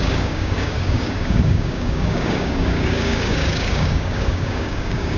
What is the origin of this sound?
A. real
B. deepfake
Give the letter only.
B